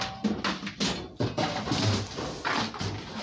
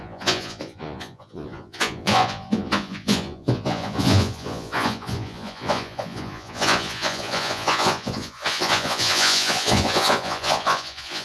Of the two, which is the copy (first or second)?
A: second